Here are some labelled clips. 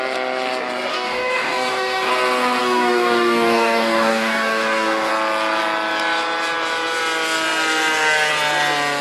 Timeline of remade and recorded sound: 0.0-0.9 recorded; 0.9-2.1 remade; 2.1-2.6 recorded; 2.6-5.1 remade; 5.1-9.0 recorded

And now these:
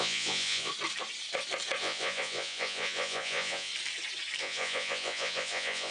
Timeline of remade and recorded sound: 0.0-0.7 remade; 0.7-1.8 recorded; 1.8-3.7 remade; 3.7-4.4 recorded; 4.4-5.9 remade

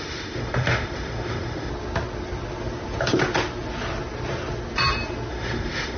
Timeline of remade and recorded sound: 0.0-1.7 remade; 1.7-5.3 recorded; 5.3-6.0 remade

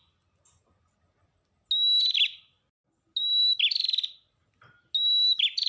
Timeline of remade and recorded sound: 0.0-5.7 recorded

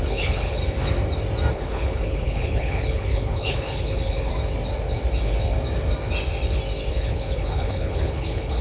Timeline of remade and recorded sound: 0.0-0.6 remade; 0.6-1.5 recorded; 1.5-4.3 remade; 4.3-6.9 recorded; 6.9-8.6 remade

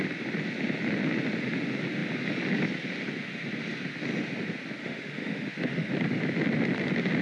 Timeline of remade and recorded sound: 0.0-4.8 recorded; 4.8-5.9 remade; 5.9-7.2 recorded

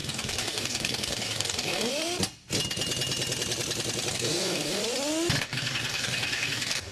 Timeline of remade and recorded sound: 0.0-1.9 remade; 1.9-4.1 recorded; 4.1-4.8 remade; 4.8-5.4 recorded; 5.4-6.9 remade